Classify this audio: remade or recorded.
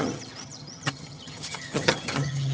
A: remade